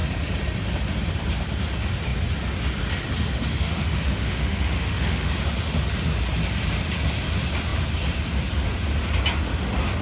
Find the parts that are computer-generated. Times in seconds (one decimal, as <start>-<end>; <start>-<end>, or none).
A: 3.5-5.3